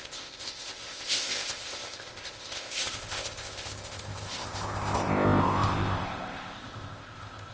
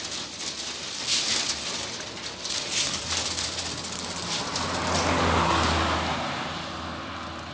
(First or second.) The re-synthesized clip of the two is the first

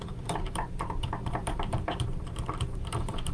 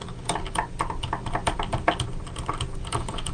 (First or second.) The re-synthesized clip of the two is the first